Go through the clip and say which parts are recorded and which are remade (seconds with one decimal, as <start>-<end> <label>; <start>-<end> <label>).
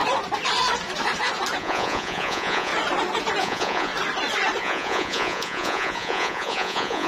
0.0-1.6 recorded; 1.6-2.7 remade; 2.7-3.4 recorded; 3.4-3.9 remade; 3.9-4.6 recorded; 4.6-7.1 remade